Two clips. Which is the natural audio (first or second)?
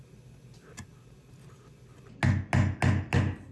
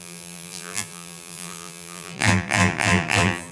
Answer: first